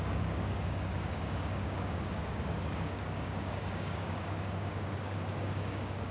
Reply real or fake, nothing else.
fake